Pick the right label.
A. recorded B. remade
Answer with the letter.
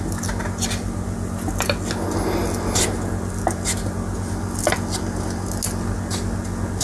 A